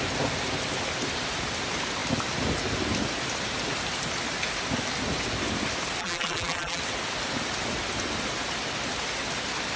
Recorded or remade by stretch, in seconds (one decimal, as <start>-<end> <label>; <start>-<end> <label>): 0.0-6.0 recorded; 6.0-6.8 remade; 6.8-9.8 recorded

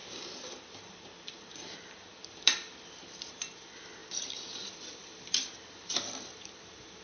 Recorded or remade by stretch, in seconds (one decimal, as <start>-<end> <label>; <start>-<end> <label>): 0.0-0.8 recorded; 0.8-7.0 remade

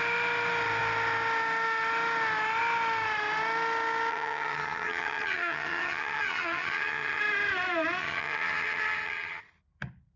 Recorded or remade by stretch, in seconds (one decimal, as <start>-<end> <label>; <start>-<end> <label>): 0.0-4.1 recorded; 4.1-7.2 remade; 7.2-8.0 recorded; 8.0-9.4 remade; 9.4-10.2 recorded